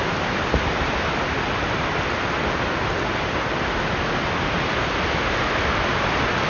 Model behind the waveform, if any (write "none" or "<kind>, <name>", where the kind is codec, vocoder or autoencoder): none